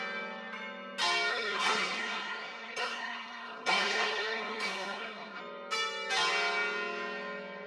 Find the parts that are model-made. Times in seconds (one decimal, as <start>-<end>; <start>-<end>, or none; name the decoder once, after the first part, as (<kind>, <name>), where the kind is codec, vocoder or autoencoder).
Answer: 1.3-5.4 (codec, SNAC)